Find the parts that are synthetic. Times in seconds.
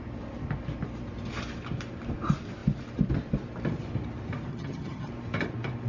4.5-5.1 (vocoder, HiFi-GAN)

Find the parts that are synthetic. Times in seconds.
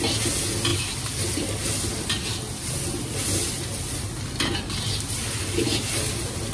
none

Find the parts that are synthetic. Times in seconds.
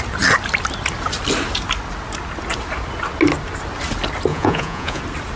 4.3-5.0 (vocoder, Vocos)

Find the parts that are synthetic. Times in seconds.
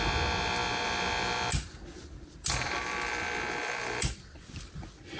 none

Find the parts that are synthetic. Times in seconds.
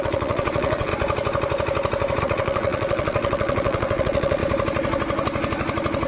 0.0-0.9 (vocoder, WaveNeXt); 2.2-4.4